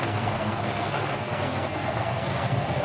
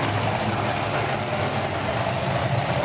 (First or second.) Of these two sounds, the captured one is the second